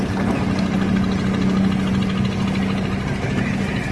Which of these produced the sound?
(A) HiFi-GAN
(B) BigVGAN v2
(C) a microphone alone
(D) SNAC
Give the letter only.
C